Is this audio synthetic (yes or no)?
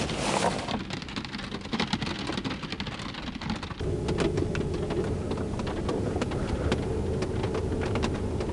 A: no